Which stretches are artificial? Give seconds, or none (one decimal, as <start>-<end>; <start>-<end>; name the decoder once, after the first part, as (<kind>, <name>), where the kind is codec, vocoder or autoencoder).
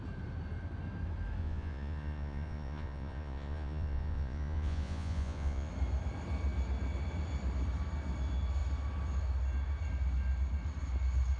1.4-5.7 (vocoder, Vocos)